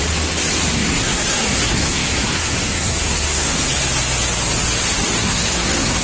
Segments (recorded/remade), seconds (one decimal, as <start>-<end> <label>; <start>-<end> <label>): 0.0-0.7 recorded; 0.7-3.6 remade; 3.6-5.2 recorded; 5.2-6.0 remade